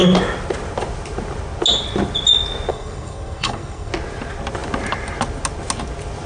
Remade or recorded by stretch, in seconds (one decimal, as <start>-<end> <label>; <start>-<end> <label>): 0.0-2.7 recorded; 2.7-3.9 remade; 3.9-6.3 recorded